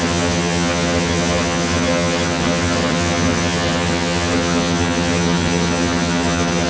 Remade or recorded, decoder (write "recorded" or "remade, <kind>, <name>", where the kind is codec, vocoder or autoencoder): remade, vocoder, HiFi-GAN